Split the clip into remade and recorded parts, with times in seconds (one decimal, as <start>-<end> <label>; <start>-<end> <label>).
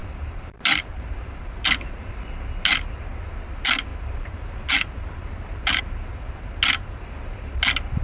0.0-1.4 remade; 1.4-3.9 recorded; 3.9-5.8 remade; 5.8-8.0 recorded